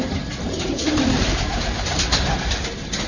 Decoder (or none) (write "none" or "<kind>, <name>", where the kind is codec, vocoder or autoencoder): none